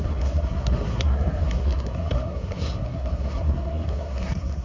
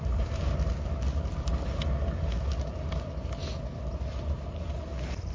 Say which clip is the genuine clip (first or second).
second